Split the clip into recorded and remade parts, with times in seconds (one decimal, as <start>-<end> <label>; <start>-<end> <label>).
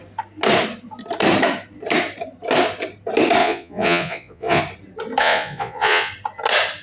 0.0-3.4 recorded; 3.4-4.6 remade; 4.6-5.2 recorded; 5.2-6.1 remade; 6.1-6.8 recorded